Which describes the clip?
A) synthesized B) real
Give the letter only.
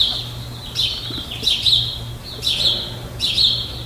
B